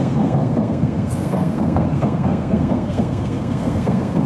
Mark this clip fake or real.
fake